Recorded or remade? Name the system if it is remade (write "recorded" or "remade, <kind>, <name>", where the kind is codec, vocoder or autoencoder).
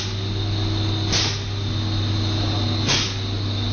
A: recorded